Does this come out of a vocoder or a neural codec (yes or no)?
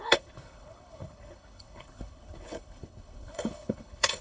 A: yes